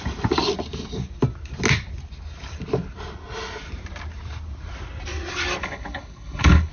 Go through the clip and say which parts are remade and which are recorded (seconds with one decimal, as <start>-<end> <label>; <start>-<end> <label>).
0.0-5.6 recorded; 5.6-6.7 remade